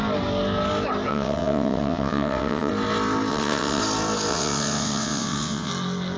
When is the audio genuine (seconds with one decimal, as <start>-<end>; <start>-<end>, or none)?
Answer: 0.0-1.1; 2.7-3.3; 3.8-4.3; 5.7-6.2